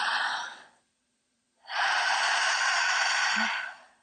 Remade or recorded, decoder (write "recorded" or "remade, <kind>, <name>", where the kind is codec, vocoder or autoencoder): remade, vocoder, Vocos